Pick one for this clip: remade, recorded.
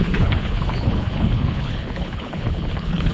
remade